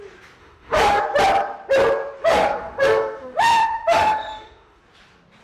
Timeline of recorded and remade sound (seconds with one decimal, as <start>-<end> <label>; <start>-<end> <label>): 0.0-0.4 recorded; 0.4-1.0 remade; 1.0-2.2 recorded; 2.2-4.8 remade; 4.8-5.4 recorded